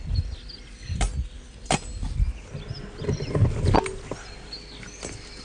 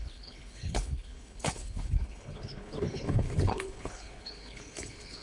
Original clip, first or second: first